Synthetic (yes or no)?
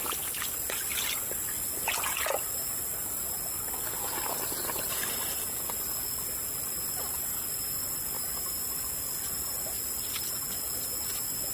no